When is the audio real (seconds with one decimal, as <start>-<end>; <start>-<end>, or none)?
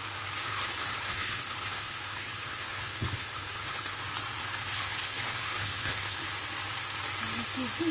0.0-0.5; 4.0-4.4; 6.2-7.9